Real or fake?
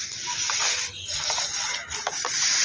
real